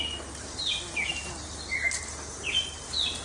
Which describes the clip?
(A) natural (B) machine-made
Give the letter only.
A